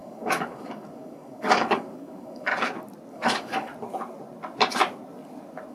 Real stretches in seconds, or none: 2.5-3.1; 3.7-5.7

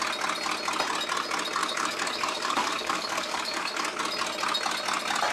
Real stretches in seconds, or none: 0.0-1.6; 4.0-5.3

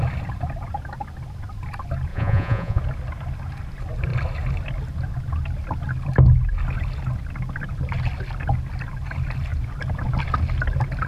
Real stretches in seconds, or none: 0.0-2.1; 2.8-11.1